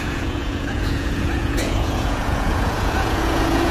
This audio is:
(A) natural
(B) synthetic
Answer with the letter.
B